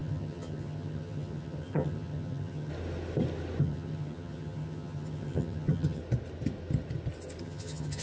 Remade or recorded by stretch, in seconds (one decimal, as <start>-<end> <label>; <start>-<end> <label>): 0.0-2.7 remade; 2.7-3.6 recorded; 3.6-6.0 remade; 6.0-7.4 recorded; 7.4-8.0 remade